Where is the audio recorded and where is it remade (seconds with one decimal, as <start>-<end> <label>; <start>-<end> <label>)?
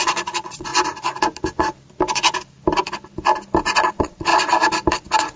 0.0-0.7 remade; 0.7-3.9 recorded; 3.9-4.3 remade; 4.3-5.4 recorded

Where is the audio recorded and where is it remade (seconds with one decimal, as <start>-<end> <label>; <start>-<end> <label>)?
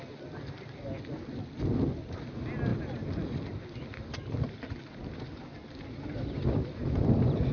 0.0-7.5 recorded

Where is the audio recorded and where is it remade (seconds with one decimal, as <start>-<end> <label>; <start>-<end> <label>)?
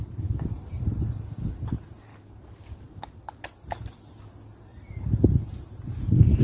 0.0-2.1 recorded; 2.1-3.0 remade; 3.0-4.7 recorded; 4.7-6.4 remade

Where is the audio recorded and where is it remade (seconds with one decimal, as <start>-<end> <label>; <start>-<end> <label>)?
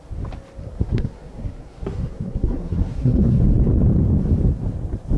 0.0-0.6 recorded; 0.6-3.4 remade; 3.4-5.2 recorded